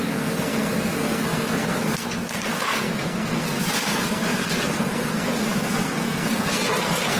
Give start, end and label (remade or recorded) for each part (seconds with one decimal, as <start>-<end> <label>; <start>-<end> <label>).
0.0-7.2 remade